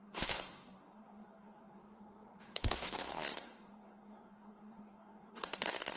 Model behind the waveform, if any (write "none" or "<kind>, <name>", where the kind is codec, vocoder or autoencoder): codec, SNAC